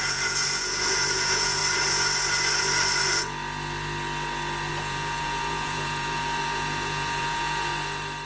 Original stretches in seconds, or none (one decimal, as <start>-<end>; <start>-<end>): 1.6-4.7; 7.7-8.3

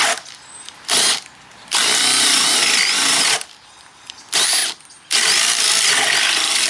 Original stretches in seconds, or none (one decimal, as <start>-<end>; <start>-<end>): 0.0-6.7

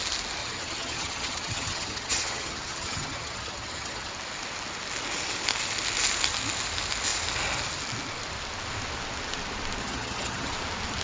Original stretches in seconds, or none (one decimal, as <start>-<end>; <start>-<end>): 0.0-0.4; 4.1-9.8; 10.5-11.0

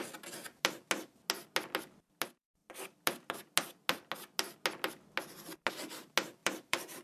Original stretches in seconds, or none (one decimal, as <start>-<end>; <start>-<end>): 0.0-6.4

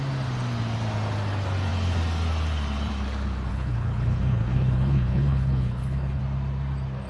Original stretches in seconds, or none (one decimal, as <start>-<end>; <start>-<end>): 0.0-3.5; 6.2-7.1

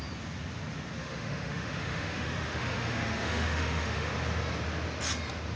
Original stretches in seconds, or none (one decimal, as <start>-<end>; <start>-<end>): 0.0-1.0; 4.1-5.6